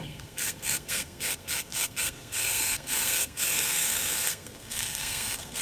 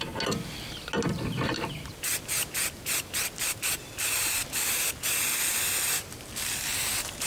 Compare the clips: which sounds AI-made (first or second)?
first